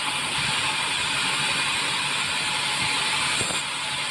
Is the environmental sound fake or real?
real